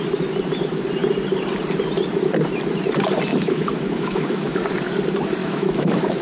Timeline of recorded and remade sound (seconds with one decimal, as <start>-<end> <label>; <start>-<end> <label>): 0.0-3.3 recorded; 3.3-4.6 remade; 4.6-5.4 recorded; 5.4-6.2 remade